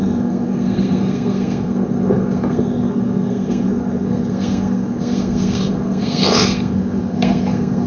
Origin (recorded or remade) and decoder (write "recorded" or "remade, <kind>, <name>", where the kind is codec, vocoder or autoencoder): remade, codec, SNAC